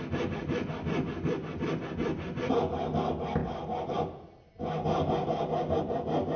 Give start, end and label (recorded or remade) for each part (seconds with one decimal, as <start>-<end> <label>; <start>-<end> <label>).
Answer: 0.0-6.4 recorded